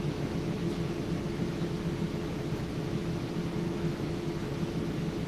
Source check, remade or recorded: remade